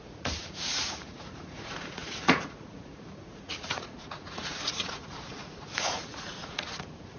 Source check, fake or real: fake